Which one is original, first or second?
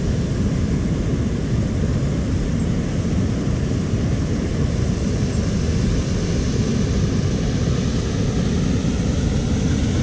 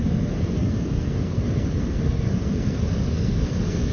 first